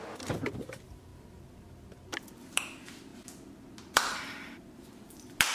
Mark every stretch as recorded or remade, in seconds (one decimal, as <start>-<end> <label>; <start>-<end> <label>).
0.0-5.5 recorded